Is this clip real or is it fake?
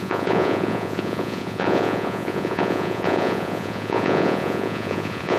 fake